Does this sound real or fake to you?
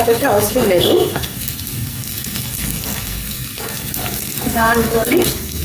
fake